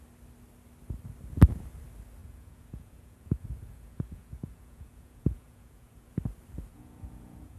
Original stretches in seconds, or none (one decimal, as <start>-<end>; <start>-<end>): 0.0-2.2; 6.1-6.7